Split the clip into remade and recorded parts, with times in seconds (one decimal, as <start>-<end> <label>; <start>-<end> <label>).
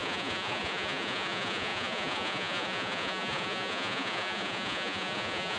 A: 0.0-5.6 remade